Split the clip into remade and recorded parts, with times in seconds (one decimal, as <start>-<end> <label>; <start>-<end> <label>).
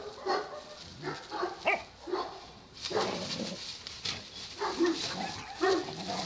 0.0-2.1 recorded; 2.1-3.3 remade; 3.3-6.3 recorded